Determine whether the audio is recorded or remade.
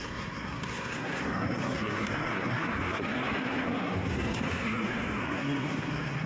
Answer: remade